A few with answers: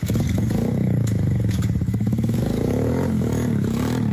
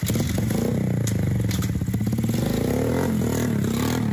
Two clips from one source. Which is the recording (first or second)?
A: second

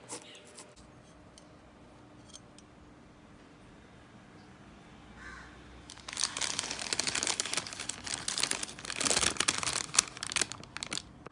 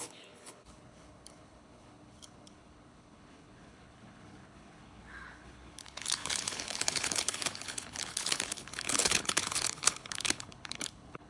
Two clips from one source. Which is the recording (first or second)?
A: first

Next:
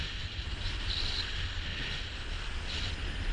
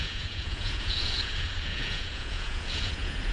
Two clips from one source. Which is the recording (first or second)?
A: first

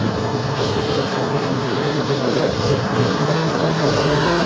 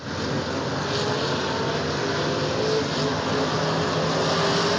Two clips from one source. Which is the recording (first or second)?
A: second